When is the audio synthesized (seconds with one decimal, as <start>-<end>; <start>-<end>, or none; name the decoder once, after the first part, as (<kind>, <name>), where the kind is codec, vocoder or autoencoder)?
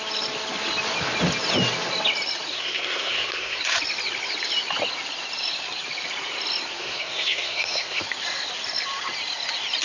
2.5-3.6 (codec, SNAC); 6.8-8.0